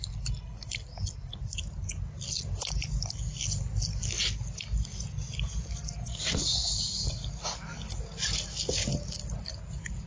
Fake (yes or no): no